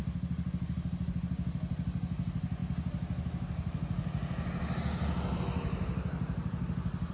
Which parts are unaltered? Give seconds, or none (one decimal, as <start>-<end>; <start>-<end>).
0.0-7.1